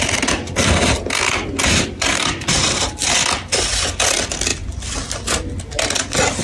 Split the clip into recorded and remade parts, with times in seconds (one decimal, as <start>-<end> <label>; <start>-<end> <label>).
0.0-6.4 recorded